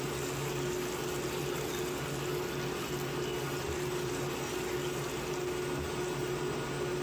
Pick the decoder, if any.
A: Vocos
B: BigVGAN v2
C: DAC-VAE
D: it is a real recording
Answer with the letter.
D